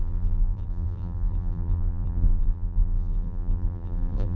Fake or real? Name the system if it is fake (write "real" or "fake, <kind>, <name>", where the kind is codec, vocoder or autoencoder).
fake, vocoder, BigVGAN v2